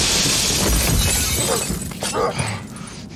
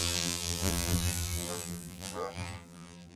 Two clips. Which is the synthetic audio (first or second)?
second